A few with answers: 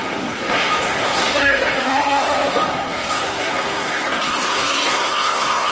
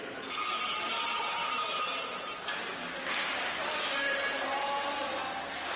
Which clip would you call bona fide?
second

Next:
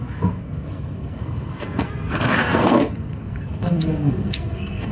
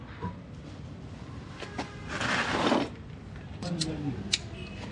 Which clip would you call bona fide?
second